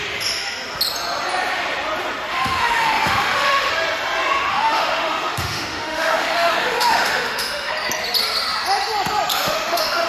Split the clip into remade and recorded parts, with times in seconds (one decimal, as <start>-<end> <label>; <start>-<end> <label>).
0.0-2.3 recorded; 2.3-3.7 remade; 3.7-4.5 recorded; 4.5-7.7 remade; 7.7-9.3 recorded; 9.3-10.1 remade